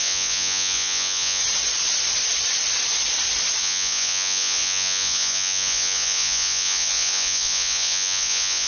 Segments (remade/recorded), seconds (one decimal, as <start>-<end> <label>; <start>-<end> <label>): 0.0-1.4 remade; 1.4-3.6 recorded; 3.6-8.7 remade